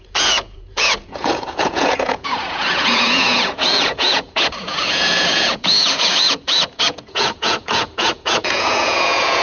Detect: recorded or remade remade